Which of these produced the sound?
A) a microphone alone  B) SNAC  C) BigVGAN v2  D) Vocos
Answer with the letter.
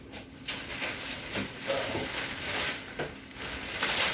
A